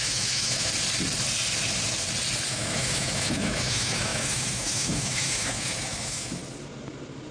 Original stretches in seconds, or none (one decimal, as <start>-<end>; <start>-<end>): 0.7-2.5; 6.4-7.3